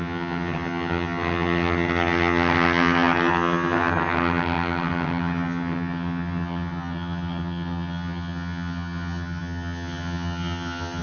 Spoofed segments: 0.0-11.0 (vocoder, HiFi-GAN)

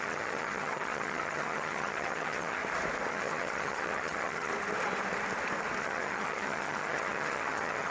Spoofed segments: 0.0-2.6 (vocoder, HiFi-GAN); 3.1-4.5; 5.8-7.9

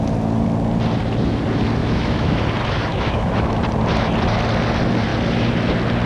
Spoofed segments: 1.8-2.4 (autoencoder, DAC-VAE); 2.9-3.6

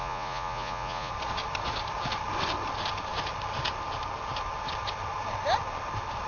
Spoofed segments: 0.0-1.1 (vocoder, Vocos)